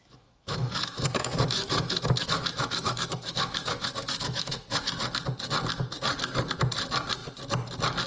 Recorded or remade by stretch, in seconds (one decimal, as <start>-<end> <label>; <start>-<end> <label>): 0.0-4.9 remade; 4.9-8.1 recorded

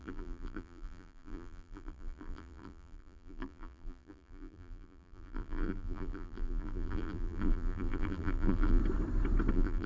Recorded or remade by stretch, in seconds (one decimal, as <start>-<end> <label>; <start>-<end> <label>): 0.0-8.8 remade; 8.8-9.5 recorded; 9.5-9.9 remade

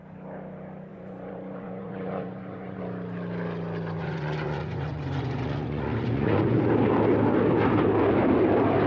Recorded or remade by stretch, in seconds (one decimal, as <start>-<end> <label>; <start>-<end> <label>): 0.0-0.9 recorded; 0.9-2.8 remade; 2.8-4.0 recorded; 4.0-6.7 remade; 6.7-8.9 recorded